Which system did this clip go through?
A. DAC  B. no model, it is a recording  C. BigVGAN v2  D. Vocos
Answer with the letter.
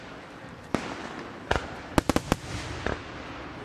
B